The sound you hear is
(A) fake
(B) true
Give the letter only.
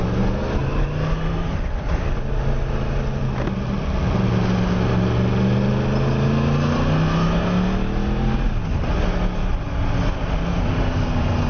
B